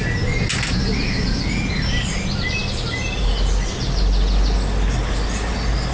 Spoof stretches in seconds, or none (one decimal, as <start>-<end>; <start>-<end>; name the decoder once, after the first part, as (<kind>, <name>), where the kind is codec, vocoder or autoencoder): none